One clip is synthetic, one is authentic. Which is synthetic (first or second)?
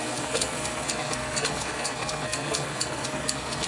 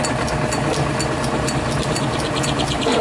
first